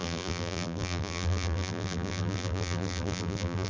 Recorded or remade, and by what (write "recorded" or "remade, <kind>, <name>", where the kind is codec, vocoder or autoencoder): remade, vocoder, BigVGAN v2